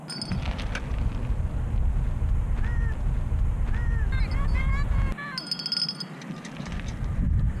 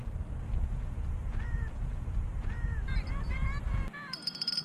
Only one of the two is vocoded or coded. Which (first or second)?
second